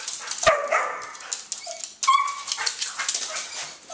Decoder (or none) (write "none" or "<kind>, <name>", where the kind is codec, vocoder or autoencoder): none